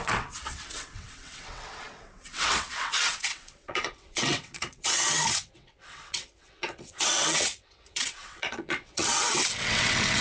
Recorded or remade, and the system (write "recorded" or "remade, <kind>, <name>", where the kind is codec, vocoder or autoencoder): remade, vocoder, WaveNeXt